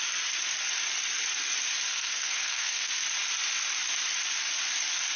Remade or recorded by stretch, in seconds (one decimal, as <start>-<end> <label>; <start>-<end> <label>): 0.0-1.9 recorded; 1.9-2.9 remade; 2.9-5.2 recorded